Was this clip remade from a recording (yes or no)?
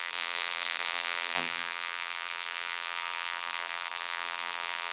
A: yes